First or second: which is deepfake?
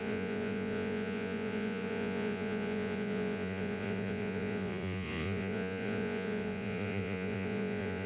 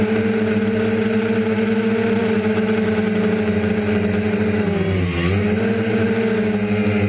first